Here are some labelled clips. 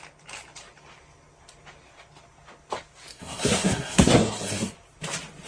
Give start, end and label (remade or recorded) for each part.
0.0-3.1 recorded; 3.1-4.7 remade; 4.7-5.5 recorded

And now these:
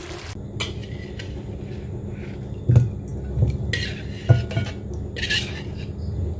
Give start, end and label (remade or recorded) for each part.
0.0-6.4 recorded

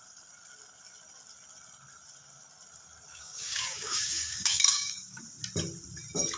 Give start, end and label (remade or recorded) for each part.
0.0-3.1 recorded; 3.1-5.2 remade; 5.2-6.4 recorded

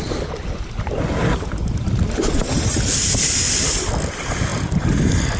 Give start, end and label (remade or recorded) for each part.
0.0-5.4 recorded

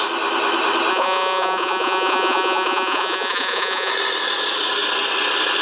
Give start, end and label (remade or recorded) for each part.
0.0-0.9 recorded; 0.9-3.9 remade; 3.9-5.6 recorded